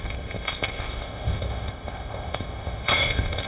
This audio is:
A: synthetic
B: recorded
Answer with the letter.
A